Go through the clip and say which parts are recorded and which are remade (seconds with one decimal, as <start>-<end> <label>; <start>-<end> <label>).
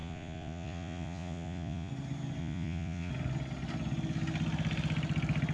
0.0-1.9 remade; 1.9-2.4 recorded; 2.4-3.1 remade; 3.1-5.5 recorded